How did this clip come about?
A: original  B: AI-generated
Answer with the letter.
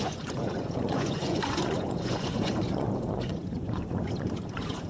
B